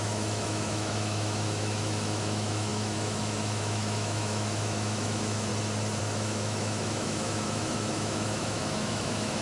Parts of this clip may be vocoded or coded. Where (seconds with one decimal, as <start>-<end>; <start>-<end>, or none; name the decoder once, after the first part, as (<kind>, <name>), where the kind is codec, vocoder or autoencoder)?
0.0-5.5 (autoencoder, DAC-VAE); 6.0-9.4